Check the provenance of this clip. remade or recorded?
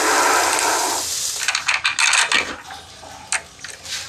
recorded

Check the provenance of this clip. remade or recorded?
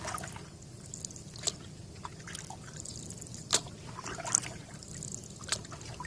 recorded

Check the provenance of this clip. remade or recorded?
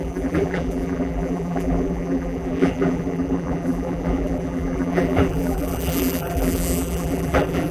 remade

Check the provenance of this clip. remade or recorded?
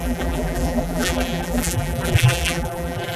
remade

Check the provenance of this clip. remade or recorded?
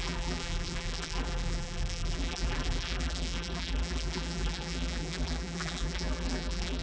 remade